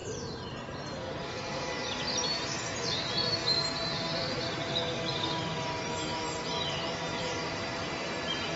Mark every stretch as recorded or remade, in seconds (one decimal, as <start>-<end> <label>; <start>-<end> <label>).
0.0-8.6 recorded